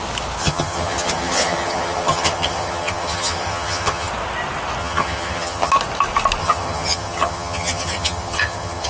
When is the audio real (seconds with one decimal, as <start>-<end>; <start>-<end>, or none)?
0.0-0.4; 4.1-4.8; 5.7-6.4